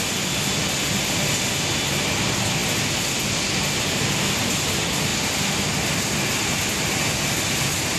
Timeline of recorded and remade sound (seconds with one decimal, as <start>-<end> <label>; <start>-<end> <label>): 0.0-8.0 recorded